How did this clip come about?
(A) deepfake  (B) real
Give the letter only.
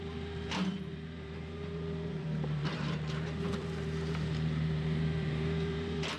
A